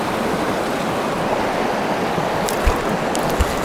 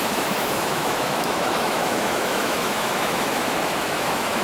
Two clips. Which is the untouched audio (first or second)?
first